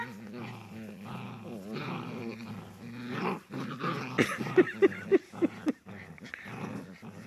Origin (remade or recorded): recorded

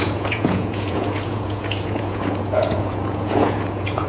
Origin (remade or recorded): remade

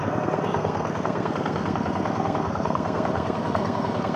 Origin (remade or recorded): remade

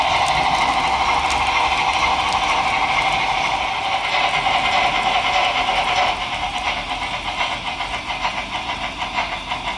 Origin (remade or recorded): recorded